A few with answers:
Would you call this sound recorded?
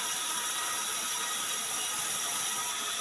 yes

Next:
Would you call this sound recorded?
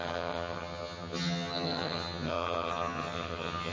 no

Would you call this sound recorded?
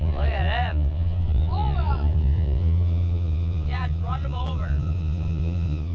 no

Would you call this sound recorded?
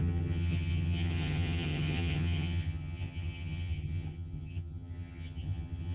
no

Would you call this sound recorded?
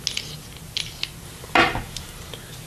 yes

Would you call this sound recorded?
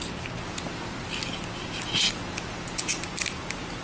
yes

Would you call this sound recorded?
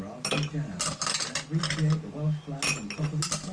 yes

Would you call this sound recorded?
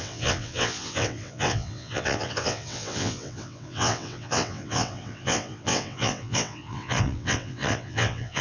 no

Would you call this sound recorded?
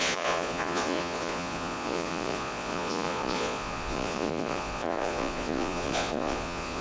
no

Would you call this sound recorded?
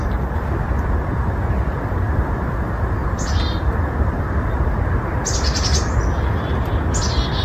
yes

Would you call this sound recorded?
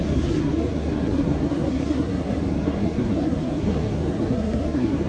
no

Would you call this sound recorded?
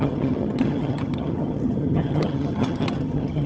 no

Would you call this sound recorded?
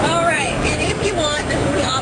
no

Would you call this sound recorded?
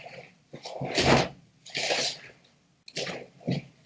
yes